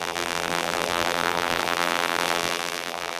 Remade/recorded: remade